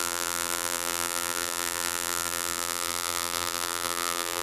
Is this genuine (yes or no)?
no